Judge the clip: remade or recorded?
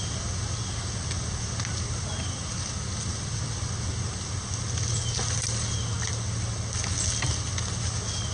recorded